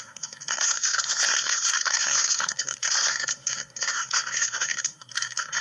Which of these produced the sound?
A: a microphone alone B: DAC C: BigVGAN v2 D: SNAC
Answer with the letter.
D